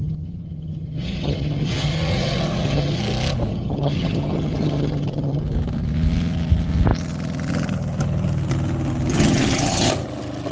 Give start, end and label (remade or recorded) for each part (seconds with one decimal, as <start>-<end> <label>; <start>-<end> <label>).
0.0-3.0 remade; 3.0-3.5 recorded; 3.5-5.4 remade; 5.4-9.1 recorded; 9.1-9.9 remade; 9.9-10.5 recorded